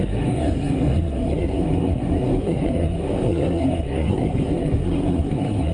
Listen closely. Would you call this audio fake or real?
fake